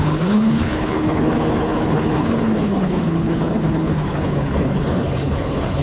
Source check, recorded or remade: remade